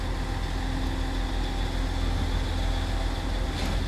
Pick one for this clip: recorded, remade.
recorded